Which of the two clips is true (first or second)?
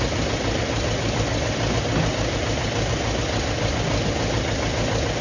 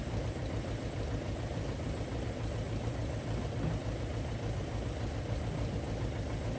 first